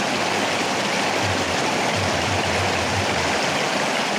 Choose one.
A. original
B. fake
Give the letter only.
A